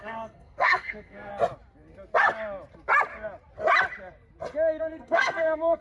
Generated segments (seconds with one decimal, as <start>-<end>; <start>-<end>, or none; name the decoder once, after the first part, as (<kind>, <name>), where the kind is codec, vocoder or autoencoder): 0.0-1.3 (codec, SNAC); 4.8-5.8